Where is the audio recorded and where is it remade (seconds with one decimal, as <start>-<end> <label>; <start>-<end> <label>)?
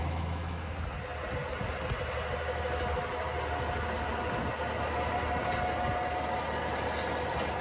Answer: 0.0-0.7 remade; 0.7-7.6 recorded